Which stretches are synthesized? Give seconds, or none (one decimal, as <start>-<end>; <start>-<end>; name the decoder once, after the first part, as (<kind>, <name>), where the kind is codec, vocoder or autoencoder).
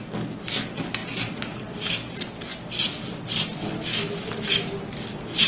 3.9-4.7 (autoencoder, DAC-VAE)